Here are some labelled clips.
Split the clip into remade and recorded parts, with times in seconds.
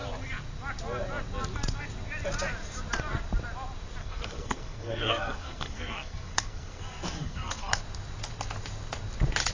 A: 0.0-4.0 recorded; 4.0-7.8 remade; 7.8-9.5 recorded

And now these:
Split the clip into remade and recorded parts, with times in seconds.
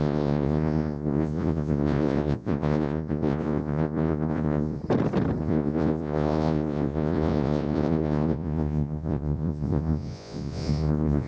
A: 0.0-4.8 remade; 4.8-5.4 recorded; 5.4-11.3 remade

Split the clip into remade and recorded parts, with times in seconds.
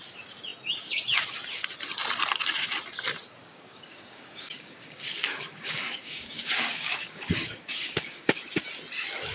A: 0.0-3.4 recorded; 3.4-8.4 remade; 8.4-9.3 recorded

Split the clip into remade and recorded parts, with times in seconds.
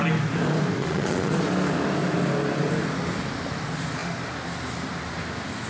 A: 0.0-0.8 recorded; 0.8-1.3 remade; 1.3-5.7 recorded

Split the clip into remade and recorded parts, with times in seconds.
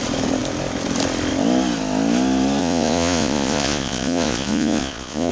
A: 0.0-2.6 recorded; 2.6-5.3 remade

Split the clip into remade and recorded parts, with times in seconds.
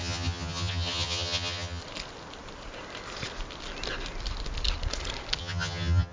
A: 0.0-1.8 remade; 1.8-5.4 recorded; 5.4-6.1 remade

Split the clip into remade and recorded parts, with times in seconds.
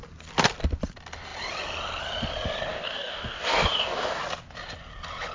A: 0.0-2.7 recorded; 2.7-4.2 remade; 4.2-5.3 recorded